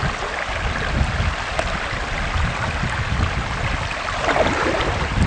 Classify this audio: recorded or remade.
recorded